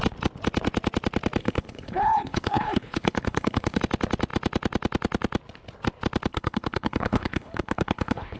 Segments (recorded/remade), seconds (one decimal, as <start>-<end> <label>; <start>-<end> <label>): 0.0-1.4 recorded; 1.4-3.8 remade; 3.8-6.3 recorded; 6.3-8.4 remade